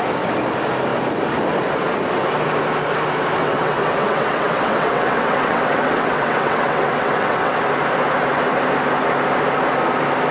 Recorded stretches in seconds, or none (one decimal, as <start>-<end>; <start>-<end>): 0.0-3.4; 7.6-10.3